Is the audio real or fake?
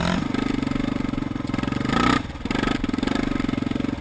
real